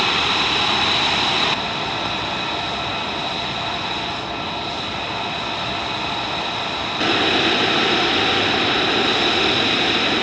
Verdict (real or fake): real